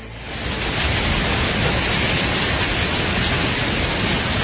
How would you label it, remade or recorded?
recorded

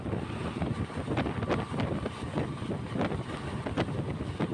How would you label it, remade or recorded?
recorded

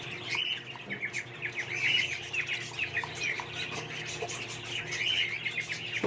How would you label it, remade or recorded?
recorded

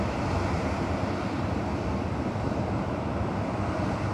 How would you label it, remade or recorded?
remade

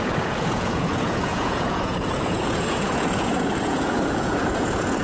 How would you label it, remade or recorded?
remade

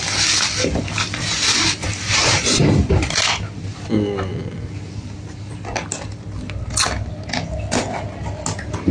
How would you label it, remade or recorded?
recorded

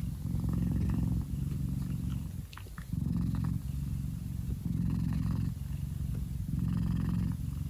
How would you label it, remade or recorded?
recorded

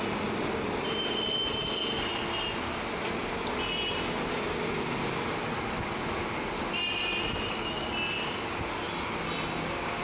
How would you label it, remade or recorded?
recorded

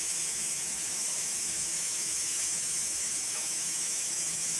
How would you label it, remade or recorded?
remade